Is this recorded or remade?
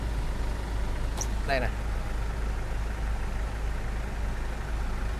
recorded